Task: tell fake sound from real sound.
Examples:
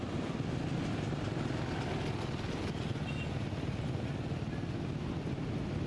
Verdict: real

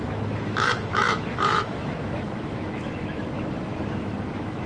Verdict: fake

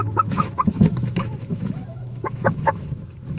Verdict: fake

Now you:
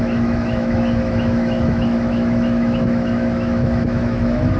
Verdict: fake